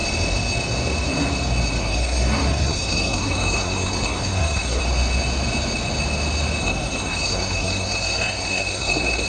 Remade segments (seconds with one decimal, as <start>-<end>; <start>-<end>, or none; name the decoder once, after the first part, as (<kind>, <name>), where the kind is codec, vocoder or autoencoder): 1.8-4.8 (codec, SNAC); 6.6-9.3